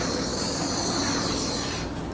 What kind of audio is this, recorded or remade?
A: recorded